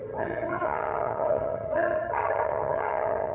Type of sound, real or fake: fake